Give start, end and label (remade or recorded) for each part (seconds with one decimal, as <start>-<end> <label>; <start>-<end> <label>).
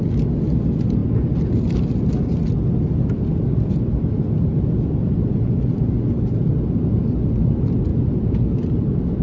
0.0-7.9 recorded; 7.9-8.7 remade; 8.7-9.2 recorded